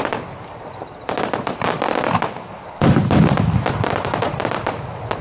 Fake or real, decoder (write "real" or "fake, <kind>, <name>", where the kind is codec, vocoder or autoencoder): real